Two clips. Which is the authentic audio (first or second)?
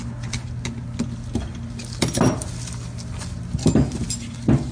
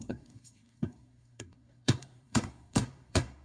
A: first